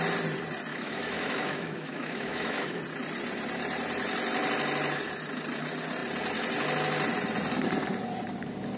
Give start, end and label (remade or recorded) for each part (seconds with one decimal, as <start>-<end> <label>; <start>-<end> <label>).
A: 0.0-0.7 recorded; 0.7-2.8 remade; 2.8-8.8 recorded